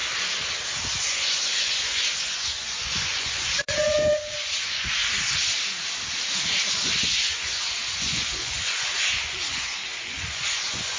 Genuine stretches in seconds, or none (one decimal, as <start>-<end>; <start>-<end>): 0.0-1.0; 5.0-6.7

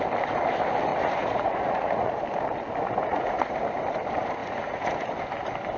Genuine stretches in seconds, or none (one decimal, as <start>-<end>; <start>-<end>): 0.0-0.9; 2.2-3.1; 3.6-4.4; 5.1-5.8

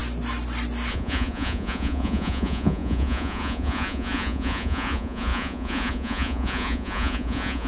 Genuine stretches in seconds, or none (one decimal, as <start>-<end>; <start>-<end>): 0.0-0.9

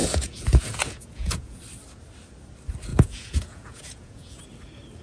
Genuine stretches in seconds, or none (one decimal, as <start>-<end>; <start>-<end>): 1.6-2.9; 4.4-5.0

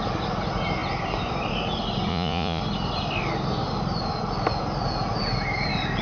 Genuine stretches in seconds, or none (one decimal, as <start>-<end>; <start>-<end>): 0.0-2.1; 2.6-6.0

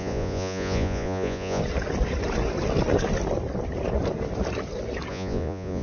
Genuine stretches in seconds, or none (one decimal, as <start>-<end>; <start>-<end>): 1.6-5.1